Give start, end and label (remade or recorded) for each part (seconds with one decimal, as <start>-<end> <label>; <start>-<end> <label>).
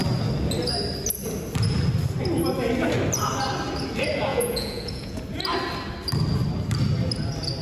0.0-4.3 recorded; 4.3-5.2 remade; 5.2-7.6 recorded